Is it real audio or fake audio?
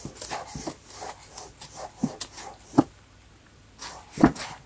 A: real